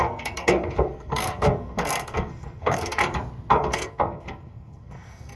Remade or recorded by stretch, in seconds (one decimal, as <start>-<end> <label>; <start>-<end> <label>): 0.0-3.0 remade; 3.0-3.5 recorded; 3.5-5.4 remade